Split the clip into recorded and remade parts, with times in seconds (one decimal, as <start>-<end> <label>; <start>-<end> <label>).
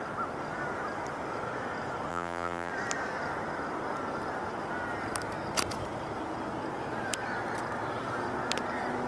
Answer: 0.0-2.1 recorded; 2.1-2.7 remade; 2.7-9.1 recorded